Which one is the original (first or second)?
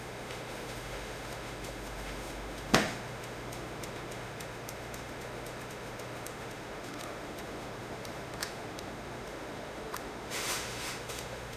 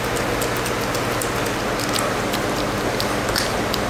second